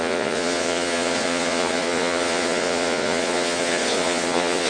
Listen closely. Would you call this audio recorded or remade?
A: remade